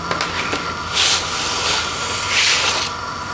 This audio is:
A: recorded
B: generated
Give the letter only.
A